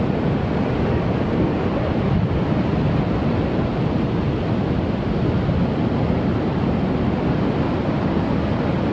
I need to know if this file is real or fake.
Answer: real